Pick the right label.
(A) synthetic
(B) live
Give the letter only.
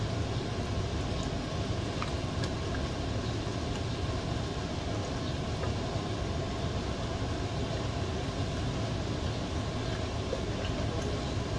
B